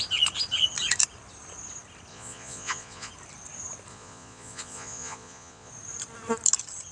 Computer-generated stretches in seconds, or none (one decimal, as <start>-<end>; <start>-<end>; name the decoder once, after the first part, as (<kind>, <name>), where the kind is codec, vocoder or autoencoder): 2.1-3.1 (vocoder, Vocos); 3.9-5.7